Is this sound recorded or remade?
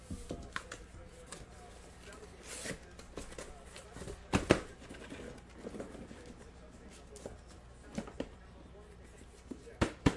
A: recorded